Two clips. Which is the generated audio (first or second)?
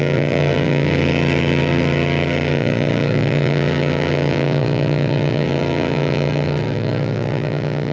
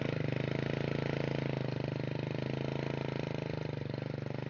first